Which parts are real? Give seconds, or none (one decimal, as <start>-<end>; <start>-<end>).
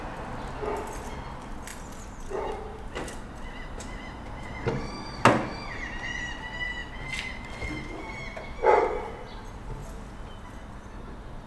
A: 0.0-1.7; 4.9-11.5